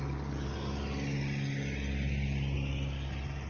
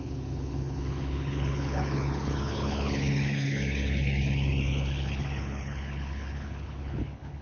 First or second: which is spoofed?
second